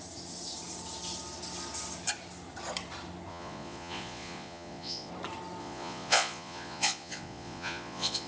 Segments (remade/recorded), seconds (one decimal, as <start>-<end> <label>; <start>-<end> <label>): 0.0-3.3 recorded; 3.3-5.1 remade; 5.1-5.6 recorded; 5.6-8.3 remade